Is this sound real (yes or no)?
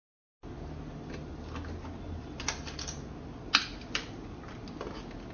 yes